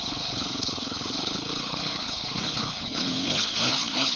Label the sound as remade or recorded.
remade